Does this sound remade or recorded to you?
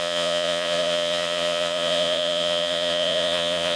remade